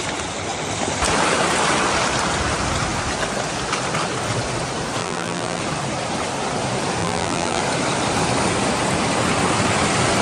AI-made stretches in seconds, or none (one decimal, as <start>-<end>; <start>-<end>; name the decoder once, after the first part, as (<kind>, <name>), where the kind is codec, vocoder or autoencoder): 5.0-5.6 (vocoder, BigVGAN v2); 7.0-7.6